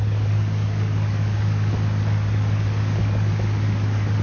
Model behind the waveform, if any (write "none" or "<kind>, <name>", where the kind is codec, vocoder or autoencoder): codec, DAC